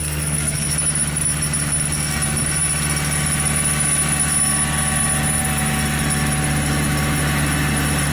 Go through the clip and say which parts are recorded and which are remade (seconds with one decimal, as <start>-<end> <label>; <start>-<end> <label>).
0.0-0.7 remade; 0.7-8.1 recorded